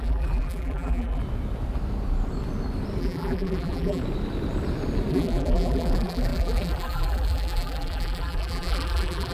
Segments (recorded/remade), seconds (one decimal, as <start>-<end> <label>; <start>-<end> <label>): 0.0-1.2 remade; 1.2-3.0 recorded; 3.0-4.0 remade; 4.0-5.1 recorded; 5.1-9.3 remade